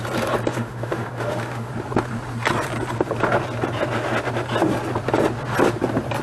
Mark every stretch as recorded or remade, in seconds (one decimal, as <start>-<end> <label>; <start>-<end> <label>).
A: 0.0-0.5 recorded; 0.5-1.7 remade; 1.7-6.2 recorded